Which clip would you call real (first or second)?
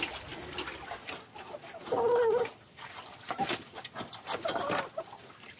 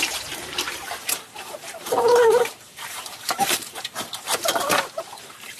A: first